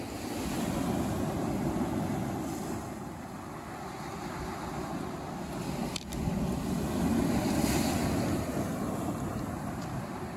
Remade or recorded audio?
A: recorded